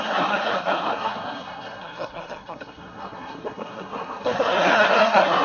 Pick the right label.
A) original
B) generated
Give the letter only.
B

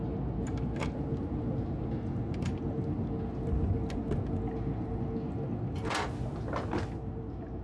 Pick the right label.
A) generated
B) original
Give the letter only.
B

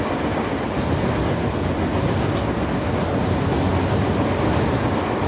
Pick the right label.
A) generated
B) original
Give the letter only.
B